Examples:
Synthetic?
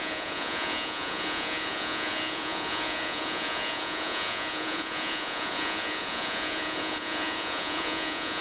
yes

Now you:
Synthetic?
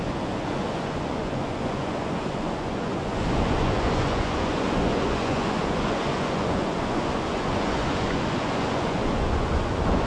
yes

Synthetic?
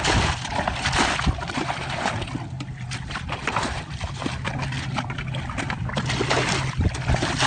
no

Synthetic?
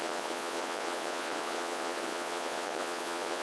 yes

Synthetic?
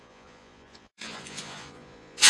yes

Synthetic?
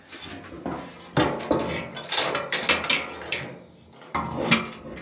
no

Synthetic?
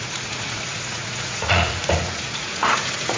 yes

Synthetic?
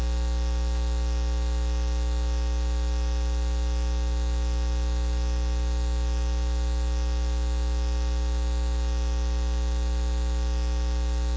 no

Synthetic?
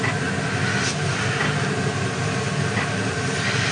no